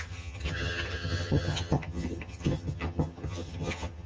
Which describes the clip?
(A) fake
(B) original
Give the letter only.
A